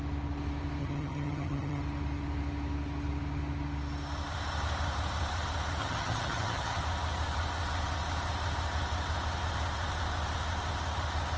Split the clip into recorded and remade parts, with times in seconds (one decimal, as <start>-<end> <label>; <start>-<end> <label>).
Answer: 0.0-0.8 recorded; 0.8-1.8 remade; 1.8-5.8 recorded; 5.8-6.8 remade; 6.8-11.4 recorded